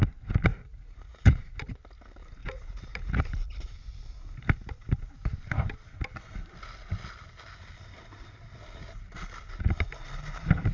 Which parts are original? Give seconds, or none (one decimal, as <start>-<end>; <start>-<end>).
0.0-0.5; 1.8-2.4; 3.2-10.7